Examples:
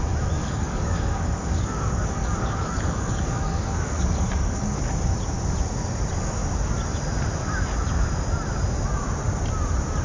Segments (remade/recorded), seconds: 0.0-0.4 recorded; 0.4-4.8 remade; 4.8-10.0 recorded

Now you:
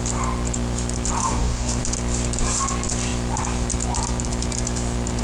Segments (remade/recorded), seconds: 0.0-1.2 recorded; 1.2-1.8 remade; 1.8-5.2 recorded

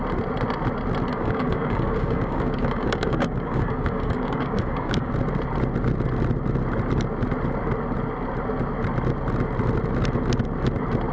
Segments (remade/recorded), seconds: 0.0-1.1 recorded; 1.1-5.1 remade; 5.1-11.1 recorded

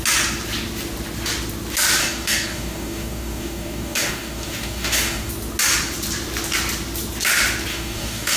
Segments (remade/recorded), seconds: 0.0-2.0 recorded; 2.0-5.3 remade; 5.3-7.7 recorded; 7.7-8.4 remade

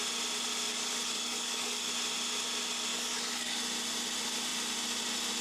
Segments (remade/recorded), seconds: 0.0-0.7 recorded; 0.7-1.9 remade; 1.9-2.9 recorded; 2.9-3.6 remade; 3.6-5.4 recorded

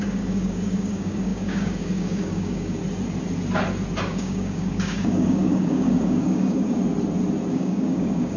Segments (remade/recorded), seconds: 0.0-2.8 remade; 2.8-4.0 recorded; 4.0-6.8 remade; 6.8-7.5 recorded; 7.5-8.4 remade